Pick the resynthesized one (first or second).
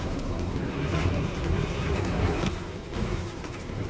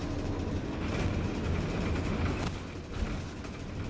first